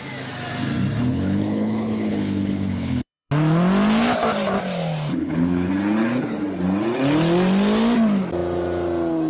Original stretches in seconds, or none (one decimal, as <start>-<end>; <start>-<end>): 0.0-1.1; 3.3-5.1; 5.7-9.3